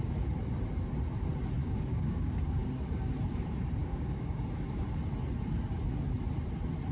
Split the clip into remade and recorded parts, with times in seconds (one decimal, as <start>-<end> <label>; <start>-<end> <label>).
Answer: 0.0-1.6 recorded; 1.6-3.1 remade; 3.1-3.8 recorded; 3.8-4.4 remade; 4.4-6.9 recorded